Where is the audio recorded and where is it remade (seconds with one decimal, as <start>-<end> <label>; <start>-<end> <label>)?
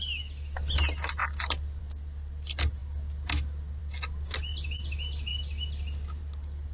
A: 0.0-6.7 recorded